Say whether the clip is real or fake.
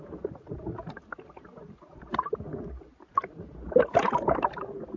real